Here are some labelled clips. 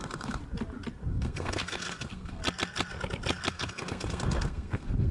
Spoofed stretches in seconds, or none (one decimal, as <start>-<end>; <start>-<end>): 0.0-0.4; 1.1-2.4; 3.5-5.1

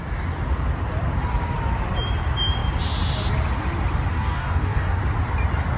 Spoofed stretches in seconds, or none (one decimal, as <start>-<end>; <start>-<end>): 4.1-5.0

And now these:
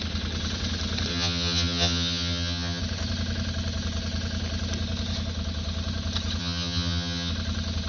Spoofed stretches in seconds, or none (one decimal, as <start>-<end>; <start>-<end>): 1.1-2.8; 6.4-7.3

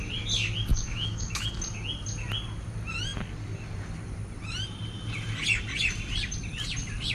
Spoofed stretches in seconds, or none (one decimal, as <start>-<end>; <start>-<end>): 0.7-1.5

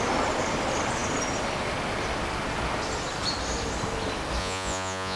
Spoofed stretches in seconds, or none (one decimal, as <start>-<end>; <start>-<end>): 4.4-5.2